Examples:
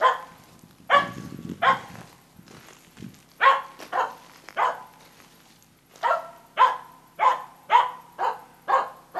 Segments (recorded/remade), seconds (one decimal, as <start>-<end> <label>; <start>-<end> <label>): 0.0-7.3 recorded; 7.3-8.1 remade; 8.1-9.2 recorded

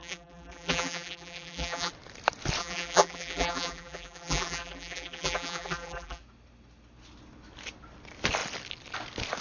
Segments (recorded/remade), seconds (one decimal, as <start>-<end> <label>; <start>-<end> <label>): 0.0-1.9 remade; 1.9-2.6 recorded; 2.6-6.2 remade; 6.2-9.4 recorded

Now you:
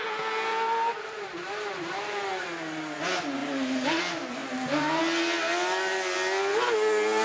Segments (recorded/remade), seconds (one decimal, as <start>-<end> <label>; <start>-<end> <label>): 0.0-0.5 recorded; 0.5-2.3 remade; 2.3-3.4 recorded; 3.4-4.0 remade; 4.0-4.4 recorded; 4.4-5.0 remade; 5.0-7.2 recorded